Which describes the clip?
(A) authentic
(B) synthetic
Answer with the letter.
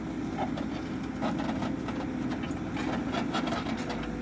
A